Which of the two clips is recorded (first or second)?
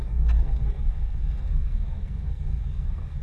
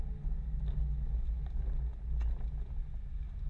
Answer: second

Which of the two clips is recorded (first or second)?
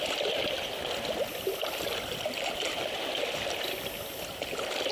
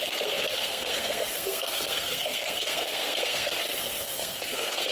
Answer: first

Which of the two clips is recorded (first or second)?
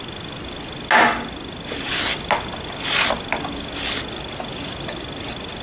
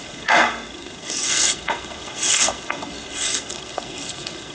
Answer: first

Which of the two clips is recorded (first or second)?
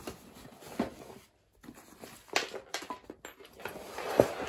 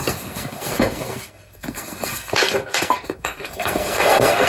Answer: first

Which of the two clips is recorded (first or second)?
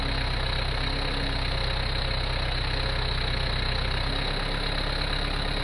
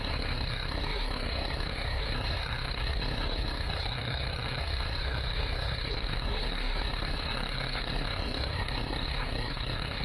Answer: first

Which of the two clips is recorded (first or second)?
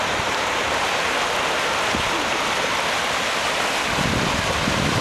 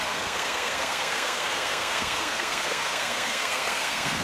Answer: first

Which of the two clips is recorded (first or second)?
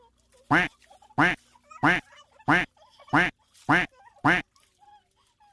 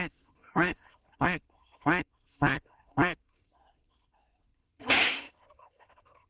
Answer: first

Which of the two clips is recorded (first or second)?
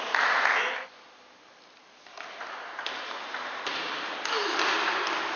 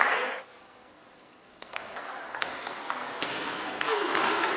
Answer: first